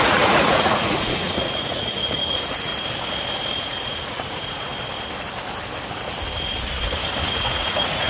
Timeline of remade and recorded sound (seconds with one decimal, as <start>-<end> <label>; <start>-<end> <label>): 0.0-2.7 remade; 2.7-3.6 recorded; 3.6-4.7 remade; 4.7-7.3 recorded; 7.3-8.1 remade